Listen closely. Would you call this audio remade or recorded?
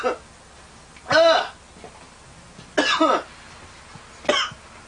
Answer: recorded